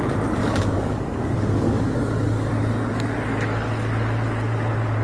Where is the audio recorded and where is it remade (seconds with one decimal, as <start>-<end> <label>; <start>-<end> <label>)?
0.0-0.4 recorded; 0.4-2.5 remade; 2.5-5.0 recorded